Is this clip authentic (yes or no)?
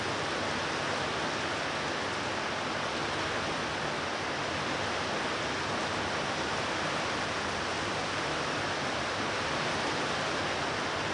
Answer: yes